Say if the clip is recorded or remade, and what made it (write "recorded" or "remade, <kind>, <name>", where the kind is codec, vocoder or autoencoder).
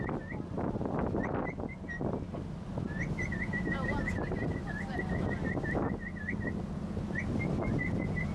recorded